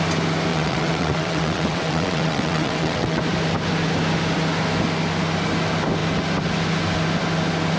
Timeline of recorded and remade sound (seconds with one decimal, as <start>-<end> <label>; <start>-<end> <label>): 0.0-0.5 recorded; 0.5-3.2 remade; 3.2-7.8 recorded